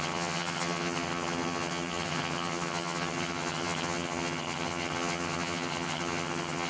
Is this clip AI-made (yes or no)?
yes